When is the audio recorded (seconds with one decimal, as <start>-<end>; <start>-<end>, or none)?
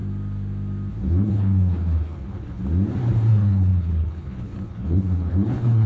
0.0-0.9; 2.6-3.3